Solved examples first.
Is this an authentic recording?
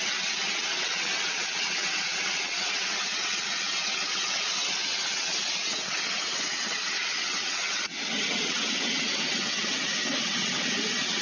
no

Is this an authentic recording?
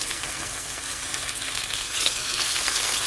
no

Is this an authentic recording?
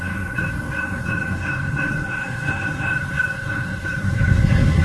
no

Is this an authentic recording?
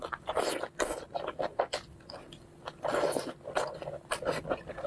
yes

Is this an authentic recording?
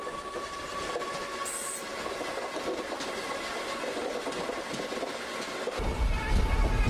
yes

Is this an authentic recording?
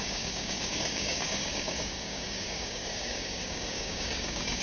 no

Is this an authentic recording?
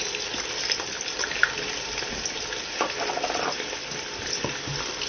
yes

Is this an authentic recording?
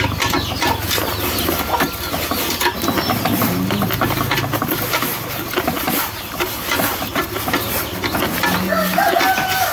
yes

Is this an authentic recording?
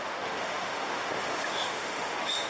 no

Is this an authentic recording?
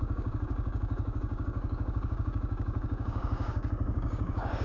no